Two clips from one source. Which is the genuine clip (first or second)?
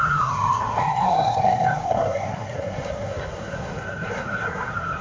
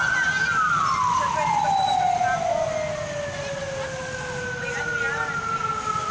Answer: second